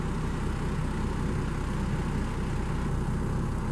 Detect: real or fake real